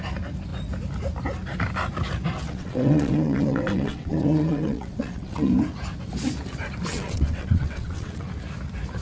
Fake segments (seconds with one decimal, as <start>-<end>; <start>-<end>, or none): 2.4-5.5; 6.9-8.3